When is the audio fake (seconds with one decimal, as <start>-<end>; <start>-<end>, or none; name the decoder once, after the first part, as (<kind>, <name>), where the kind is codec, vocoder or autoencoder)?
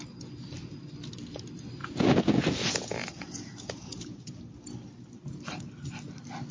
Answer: 1.8-4.4 (vocoder, Vocos)